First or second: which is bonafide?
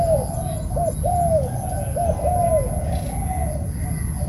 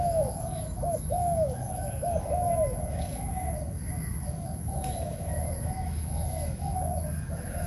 first